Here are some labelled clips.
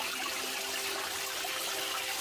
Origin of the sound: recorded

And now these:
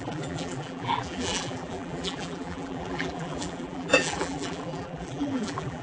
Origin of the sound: remade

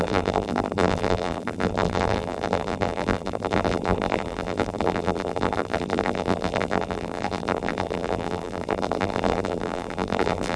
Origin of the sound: remade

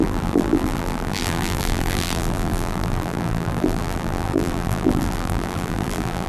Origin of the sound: remade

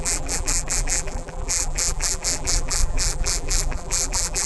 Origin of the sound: remade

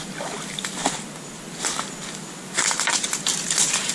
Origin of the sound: recorded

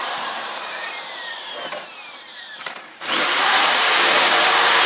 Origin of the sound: remade